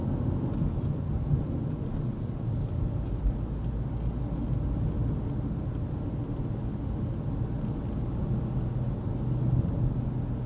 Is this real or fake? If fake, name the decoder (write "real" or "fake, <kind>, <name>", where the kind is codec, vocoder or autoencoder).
real